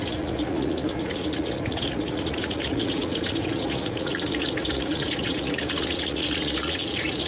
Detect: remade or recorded remade